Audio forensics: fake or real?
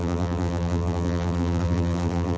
fake